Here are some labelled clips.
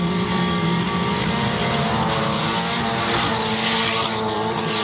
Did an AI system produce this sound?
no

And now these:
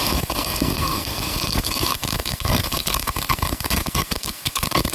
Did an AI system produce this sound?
yes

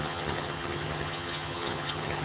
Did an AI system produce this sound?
yes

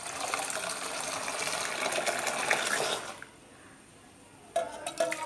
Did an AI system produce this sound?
no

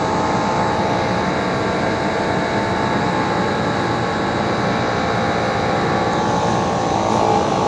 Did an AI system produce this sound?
no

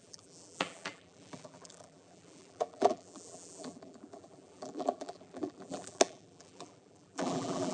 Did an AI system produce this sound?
yes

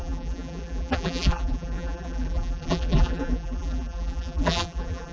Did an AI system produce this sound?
yes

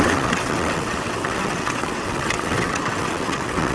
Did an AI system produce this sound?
yes